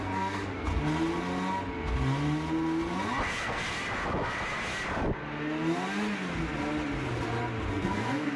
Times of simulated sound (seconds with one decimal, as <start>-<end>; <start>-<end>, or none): 0.0-0.7; 3.3-3.7; 7.7-8.4